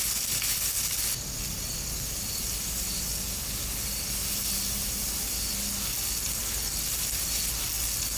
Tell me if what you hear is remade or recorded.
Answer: recorded